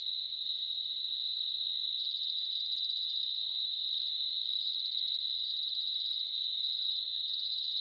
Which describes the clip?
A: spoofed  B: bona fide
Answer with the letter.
A